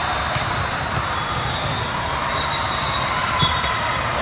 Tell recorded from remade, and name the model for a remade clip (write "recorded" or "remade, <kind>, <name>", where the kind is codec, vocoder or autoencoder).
remade, vocoder, BigVGAN v2